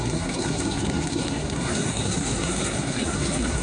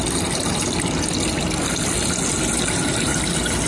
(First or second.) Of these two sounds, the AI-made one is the first